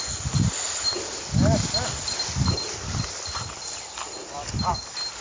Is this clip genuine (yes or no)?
yes